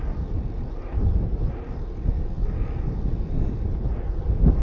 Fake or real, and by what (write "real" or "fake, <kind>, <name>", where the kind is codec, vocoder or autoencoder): real